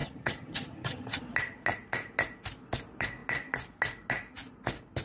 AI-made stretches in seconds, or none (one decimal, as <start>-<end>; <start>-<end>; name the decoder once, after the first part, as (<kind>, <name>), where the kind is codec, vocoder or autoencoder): 0.0-1.2 (vocoder, HiFi-GAN)